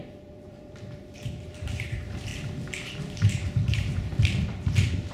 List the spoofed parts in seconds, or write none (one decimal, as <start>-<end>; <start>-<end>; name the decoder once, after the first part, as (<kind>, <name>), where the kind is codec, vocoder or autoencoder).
0.0-2.3 (vocoder, BigVGAN v2); 3.0-4.1